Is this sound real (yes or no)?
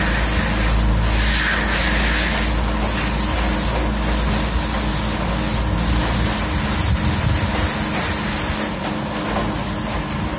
yes